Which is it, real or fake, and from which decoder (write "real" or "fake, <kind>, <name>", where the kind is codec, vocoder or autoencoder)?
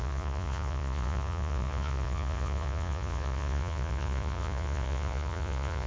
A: fake, vocoder, Vocos